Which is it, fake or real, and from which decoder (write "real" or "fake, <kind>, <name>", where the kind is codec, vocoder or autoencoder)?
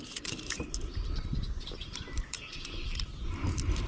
fake, vocoder, BigVGAN v2